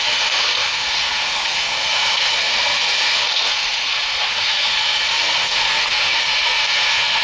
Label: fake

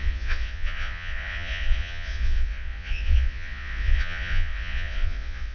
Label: fake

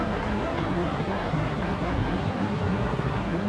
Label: fake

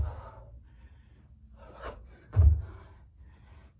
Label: real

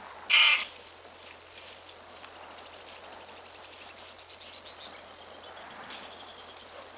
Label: real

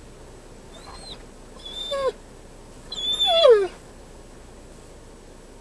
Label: real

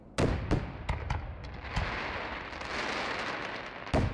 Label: real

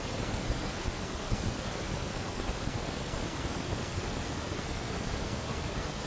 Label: fake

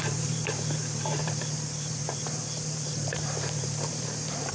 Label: fake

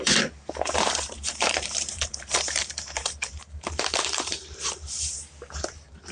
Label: fake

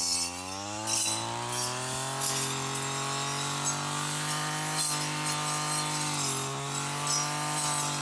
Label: real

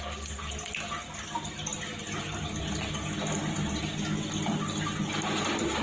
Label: real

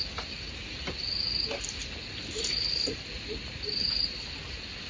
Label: real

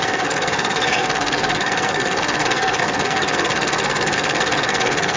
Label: fake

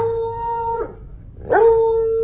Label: real